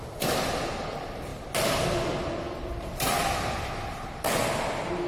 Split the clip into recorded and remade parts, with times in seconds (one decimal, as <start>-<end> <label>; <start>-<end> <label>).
0.0-5.1 recorded